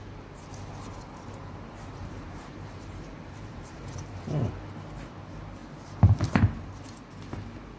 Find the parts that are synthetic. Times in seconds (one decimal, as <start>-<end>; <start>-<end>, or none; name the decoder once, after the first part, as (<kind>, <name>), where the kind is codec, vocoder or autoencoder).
2.0-4.1 (vocoder, BigVGAN v2); 5.6-6.7